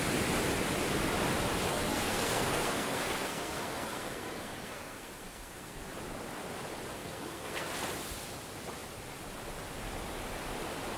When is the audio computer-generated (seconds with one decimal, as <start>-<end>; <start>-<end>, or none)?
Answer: 1.7-5.8; 6.9-7.7